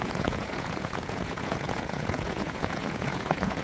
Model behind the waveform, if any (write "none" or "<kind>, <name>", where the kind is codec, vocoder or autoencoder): vocoder, Vocos